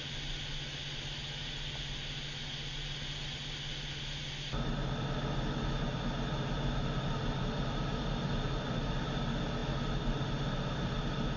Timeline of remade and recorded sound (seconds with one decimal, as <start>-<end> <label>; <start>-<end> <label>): 0.0-11.4 recorded